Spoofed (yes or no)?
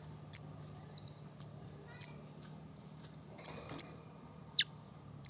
no